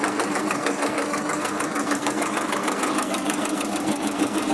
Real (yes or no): no